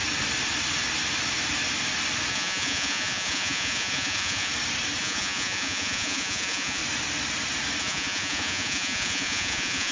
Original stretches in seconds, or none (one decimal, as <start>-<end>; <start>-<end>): 0.0-2.3; 4.5-5.0; 6.8-7.8